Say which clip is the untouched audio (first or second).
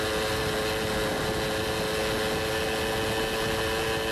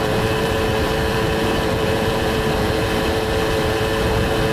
first